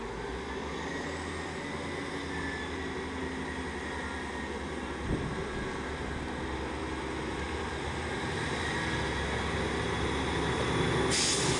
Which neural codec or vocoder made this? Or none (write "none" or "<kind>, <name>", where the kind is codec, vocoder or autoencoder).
none